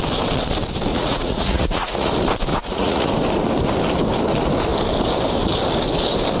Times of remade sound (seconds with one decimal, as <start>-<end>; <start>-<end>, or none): 0.9-2.1; 2.5-3.1

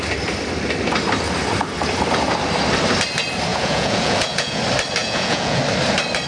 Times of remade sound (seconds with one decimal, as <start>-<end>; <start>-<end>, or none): 3.5-4.6; 5.0-5.6